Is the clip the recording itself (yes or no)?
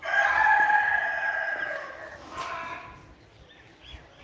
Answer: yes